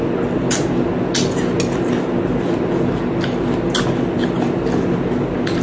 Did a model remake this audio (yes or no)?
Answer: no